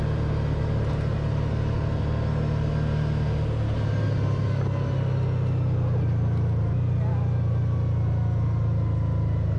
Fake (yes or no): no